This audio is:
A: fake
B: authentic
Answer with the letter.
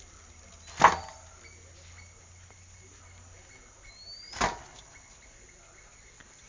B